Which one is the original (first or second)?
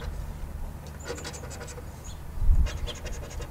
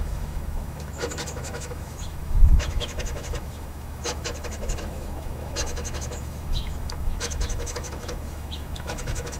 first